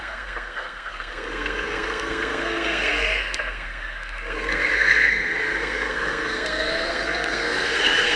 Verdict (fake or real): fake